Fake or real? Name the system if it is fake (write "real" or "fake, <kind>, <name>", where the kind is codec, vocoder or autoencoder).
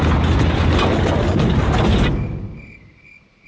real